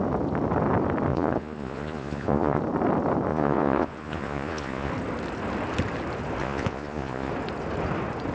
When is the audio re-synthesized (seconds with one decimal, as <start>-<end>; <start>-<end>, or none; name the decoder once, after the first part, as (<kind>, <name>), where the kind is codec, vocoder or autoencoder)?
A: 1.1-2.6 (vocoder, Vocos); 3.3-4.9; 6.4-7.3

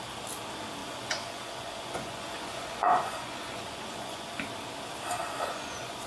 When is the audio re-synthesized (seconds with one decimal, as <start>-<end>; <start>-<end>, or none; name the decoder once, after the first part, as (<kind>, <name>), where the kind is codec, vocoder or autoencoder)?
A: 0.8-4.3 (vocoder, Vocos); 5.2-6.1

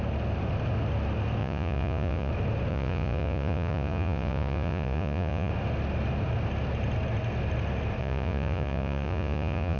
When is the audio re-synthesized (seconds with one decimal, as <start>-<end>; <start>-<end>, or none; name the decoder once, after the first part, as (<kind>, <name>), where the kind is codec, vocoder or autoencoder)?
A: 1.4-2.3 (vocoder, Vocos); 2.7-5.5; 8.0-9.8

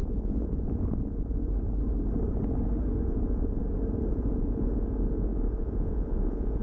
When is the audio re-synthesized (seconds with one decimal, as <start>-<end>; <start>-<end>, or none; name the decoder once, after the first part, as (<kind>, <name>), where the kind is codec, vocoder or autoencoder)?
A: 0.0-1.4 (vocoder, Vocos); 3.0-3.6; 4.1-6.6